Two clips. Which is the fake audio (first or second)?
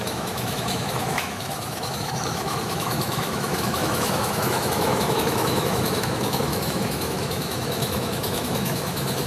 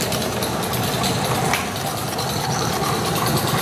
first